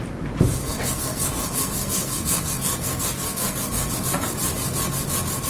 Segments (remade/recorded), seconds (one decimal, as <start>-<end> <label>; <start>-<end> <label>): 0.0-0.6 recorded; 0.6-3.9 remade; 3.9-5.5 recorded